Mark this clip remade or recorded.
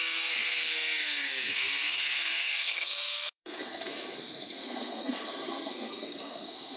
remade